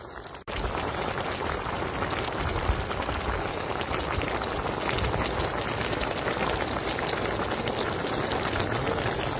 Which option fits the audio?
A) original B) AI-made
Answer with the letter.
A